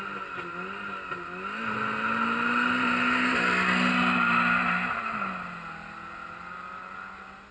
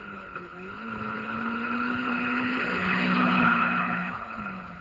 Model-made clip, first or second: second